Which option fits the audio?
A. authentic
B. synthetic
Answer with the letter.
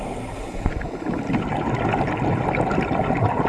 A